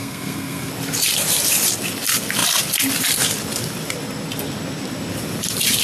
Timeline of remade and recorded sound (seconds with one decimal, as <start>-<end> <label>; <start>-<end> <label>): 0.0-0.7 remade; 0.7-5.8 recorded